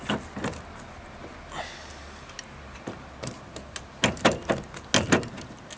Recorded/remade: recorded